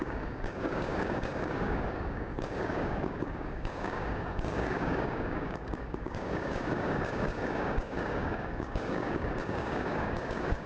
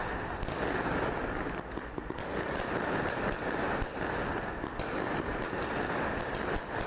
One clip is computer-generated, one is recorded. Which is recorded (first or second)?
second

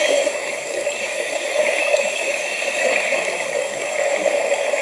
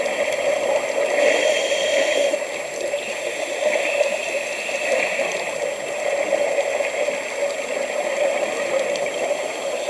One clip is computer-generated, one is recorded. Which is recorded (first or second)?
second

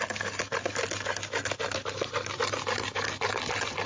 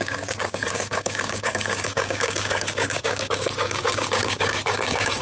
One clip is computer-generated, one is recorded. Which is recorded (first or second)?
first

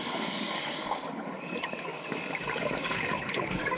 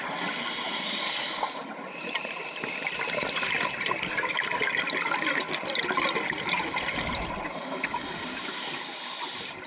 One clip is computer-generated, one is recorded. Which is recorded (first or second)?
second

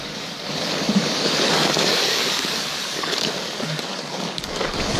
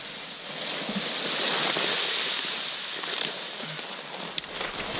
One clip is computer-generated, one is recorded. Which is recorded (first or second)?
second